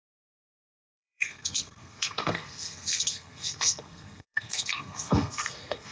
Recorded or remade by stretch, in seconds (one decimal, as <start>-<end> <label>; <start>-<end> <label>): 0.0-5.9 remade